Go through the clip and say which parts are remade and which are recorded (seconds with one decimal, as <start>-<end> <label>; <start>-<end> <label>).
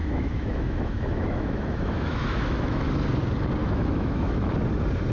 0.0-2.9 remade; 2.9-3.6 recorded; 3.6-4.5 remade; 4.5-5.1 recorded